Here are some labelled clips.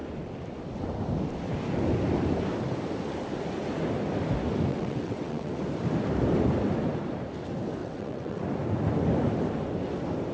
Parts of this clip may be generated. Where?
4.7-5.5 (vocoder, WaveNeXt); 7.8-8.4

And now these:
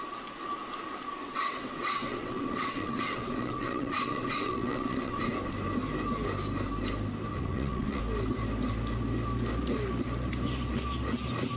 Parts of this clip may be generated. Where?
1.2-5.2 (vocoder, WaveNeXt); 7.3-8.0

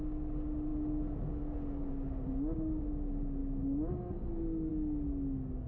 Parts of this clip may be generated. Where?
none

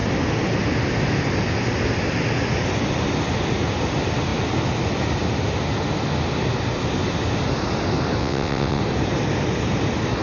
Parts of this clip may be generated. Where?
8.2-8.8 (vocoder, WaveNeXt)

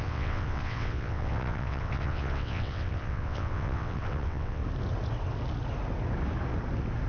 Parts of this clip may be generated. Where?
0.0-4.6 (vocoder, WaveNeXt)

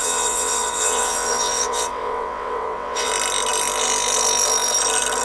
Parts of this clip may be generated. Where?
0.0-3.1 (vocoder, WaveNeXt)

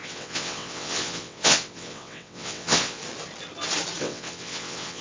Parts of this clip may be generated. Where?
0.0-3.0 (vocoder, WaveNeXt); 4.0-5.0

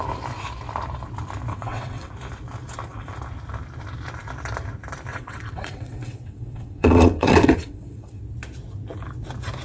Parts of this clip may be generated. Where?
1.5-2.1 (vocoder, WaveNeXt); 5.1-8.2